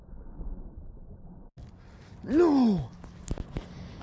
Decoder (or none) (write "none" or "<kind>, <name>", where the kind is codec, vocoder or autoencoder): none